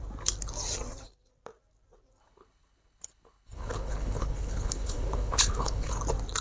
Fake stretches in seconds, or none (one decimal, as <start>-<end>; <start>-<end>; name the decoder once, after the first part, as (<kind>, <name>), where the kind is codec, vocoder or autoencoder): 2.2-6.0 (codec, HILCodec)